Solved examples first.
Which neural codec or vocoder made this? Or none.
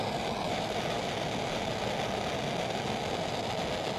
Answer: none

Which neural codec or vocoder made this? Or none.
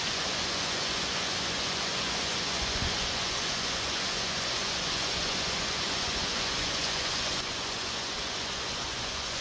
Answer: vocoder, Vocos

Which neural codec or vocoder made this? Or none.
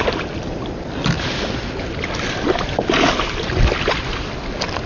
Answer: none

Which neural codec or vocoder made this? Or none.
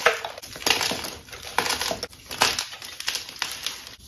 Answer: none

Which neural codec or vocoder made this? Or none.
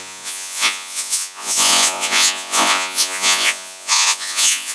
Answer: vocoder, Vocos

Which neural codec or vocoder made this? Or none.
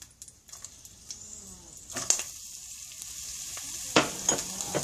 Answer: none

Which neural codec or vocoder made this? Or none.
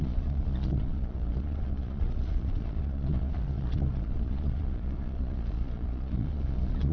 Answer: vocoder, Vocos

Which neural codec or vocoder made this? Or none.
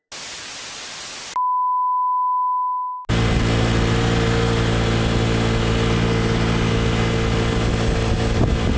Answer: none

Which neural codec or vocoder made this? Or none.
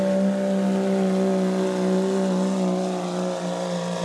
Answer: none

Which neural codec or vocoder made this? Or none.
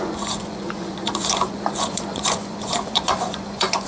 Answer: vocoder, Vocos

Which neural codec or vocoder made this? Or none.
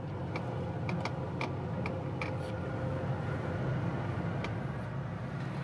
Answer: none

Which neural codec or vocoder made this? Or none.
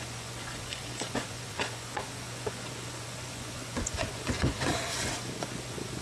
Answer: vocoder, Vocos